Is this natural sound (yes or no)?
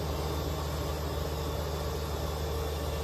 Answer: yes